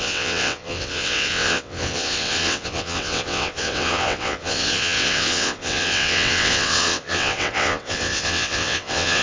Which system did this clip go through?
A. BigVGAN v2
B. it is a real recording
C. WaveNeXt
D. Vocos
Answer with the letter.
C